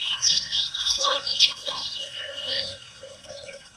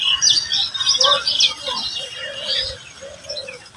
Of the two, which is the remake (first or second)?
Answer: first